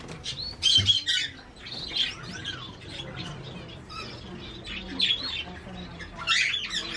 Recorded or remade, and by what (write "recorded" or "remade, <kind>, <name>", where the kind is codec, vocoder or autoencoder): recorded